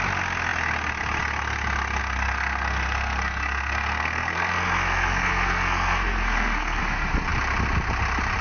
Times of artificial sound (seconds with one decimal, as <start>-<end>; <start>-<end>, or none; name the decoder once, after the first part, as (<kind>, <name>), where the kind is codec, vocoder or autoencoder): 2.0-6.8 (codec, SNAC)